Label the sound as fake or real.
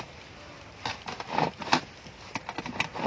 real